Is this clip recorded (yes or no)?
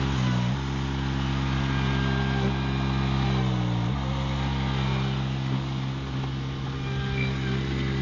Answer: yes